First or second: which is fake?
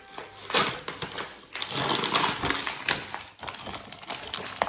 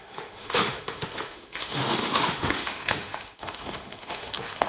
second